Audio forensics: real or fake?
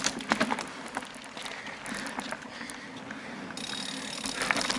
real